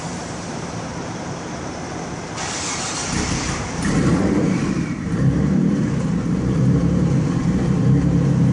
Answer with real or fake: fake